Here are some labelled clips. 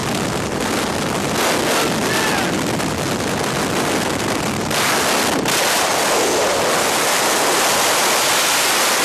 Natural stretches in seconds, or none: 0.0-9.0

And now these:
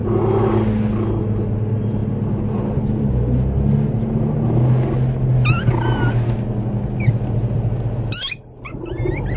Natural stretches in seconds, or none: 0.0-9.4

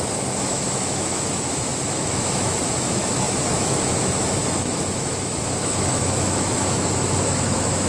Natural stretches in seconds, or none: none